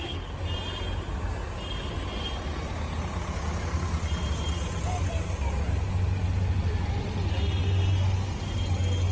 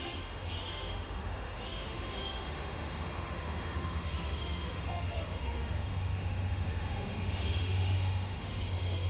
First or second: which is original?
first